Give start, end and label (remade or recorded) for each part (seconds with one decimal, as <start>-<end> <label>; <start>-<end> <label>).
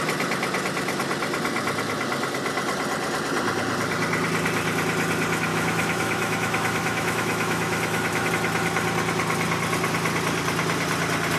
0.0-5.5 recorded; 5.5-8.3 remade; 8.3-11.4 recorded